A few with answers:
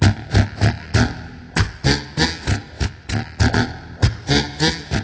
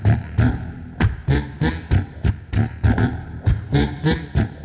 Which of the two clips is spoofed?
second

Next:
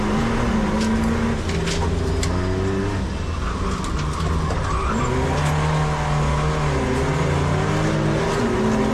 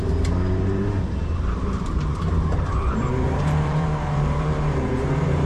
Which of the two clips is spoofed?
second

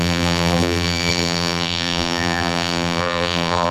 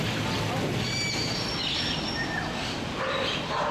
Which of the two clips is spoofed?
first